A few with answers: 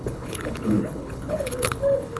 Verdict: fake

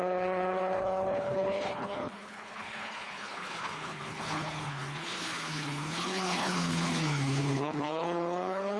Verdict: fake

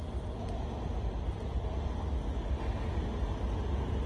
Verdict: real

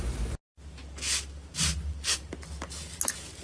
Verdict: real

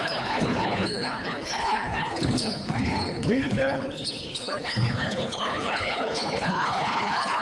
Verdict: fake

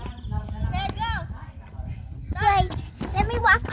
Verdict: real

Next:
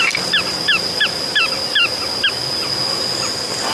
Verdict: real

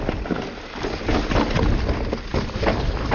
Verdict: real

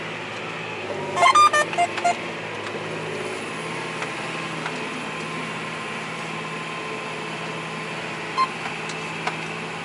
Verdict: real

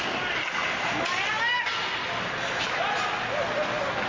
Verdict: real